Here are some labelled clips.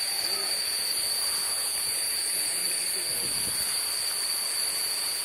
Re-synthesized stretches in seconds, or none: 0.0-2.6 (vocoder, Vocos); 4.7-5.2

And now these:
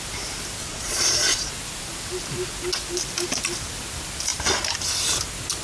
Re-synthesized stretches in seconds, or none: 0.6-1.5 (vocoder, Vocos)

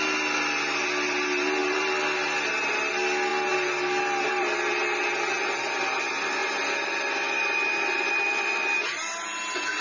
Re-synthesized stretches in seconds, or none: none

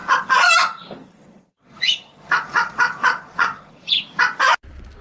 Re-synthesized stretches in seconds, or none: 0.0-0.5 (vocoder, Vocos); 1.0-4.0